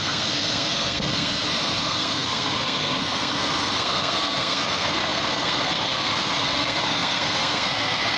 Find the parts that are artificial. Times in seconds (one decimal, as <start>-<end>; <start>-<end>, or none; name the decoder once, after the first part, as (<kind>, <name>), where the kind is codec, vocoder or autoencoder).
0.0-8.2 (codec, SNAC)